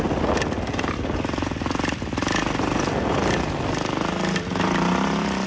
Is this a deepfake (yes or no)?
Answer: no